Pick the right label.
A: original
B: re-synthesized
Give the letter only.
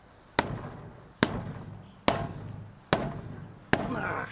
A